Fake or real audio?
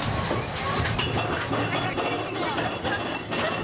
real